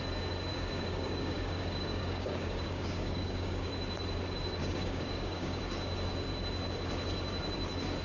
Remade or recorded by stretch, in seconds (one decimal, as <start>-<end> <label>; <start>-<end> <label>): 0.0-0.5 recorded; 0.5-3.7 remade; 3.7-4.6 recorded; 4.6-5.6 remade; 5.6-8.0 recorded